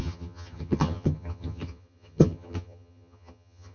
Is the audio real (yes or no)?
no